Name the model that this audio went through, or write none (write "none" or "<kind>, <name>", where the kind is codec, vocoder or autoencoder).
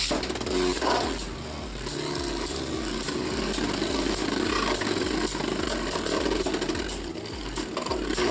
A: none